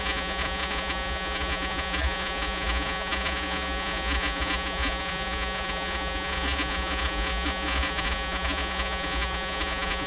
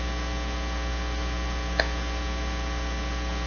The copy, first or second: first